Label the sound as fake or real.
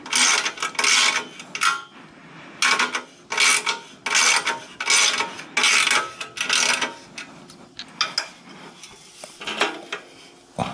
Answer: real